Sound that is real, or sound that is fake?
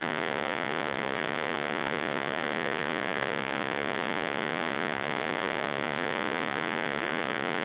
fake